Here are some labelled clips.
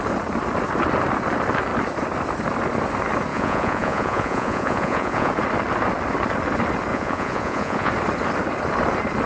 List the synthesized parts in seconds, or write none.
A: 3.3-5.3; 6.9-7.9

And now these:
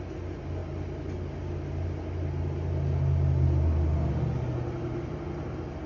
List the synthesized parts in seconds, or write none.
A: none

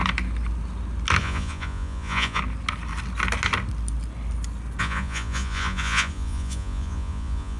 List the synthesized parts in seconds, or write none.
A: 1.2-2.4; 4.8-7.6

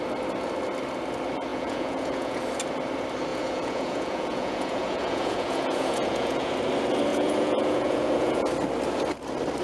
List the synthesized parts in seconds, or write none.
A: 1.5-2.4; 3.3-6.5; 7.1-8.5

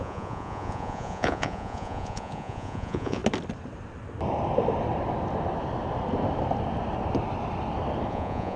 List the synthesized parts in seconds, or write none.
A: 0.0-3.2; 8.1-8.6

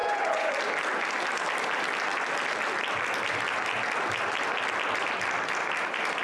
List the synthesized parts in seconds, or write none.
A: 0.0-0.5